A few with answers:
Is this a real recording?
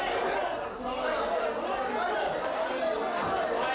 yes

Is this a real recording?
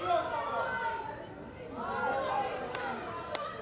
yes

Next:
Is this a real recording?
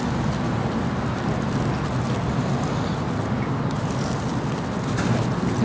yes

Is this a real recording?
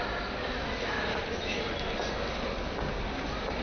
yes